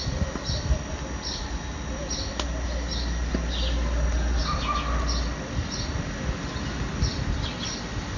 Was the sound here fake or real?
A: real